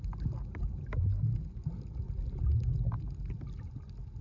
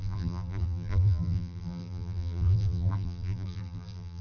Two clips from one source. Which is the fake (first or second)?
second